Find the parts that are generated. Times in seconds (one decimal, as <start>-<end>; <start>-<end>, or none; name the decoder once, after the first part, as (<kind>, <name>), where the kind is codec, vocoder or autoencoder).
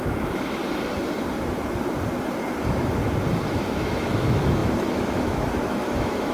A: 0.0-0.6 (autoencoder, DAC-VAE); 2.6-3.0; 3.5-6.3